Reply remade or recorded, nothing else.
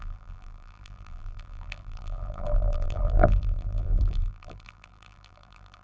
remade